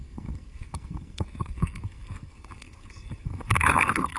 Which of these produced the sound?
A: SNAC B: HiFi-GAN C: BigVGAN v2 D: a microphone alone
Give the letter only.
A